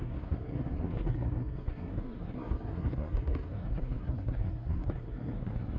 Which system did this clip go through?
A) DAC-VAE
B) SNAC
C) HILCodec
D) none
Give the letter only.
B